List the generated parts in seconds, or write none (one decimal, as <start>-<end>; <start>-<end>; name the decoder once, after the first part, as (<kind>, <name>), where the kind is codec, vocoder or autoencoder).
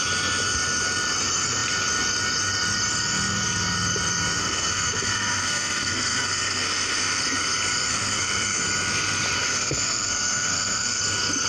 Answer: 4.4-7.2 (codec, SNAC); 7.9-8.6; 9.4-11.0